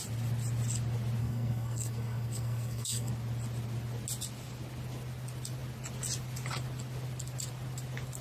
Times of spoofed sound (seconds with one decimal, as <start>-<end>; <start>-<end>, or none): 1.2-3.1